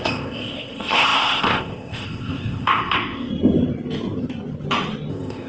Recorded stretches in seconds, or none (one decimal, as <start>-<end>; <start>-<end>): 3.3-5.1